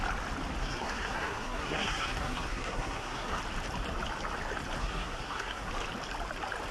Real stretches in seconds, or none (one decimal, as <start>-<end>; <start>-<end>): 0.0-0.6; 3.4-4.8; 5.7-6.7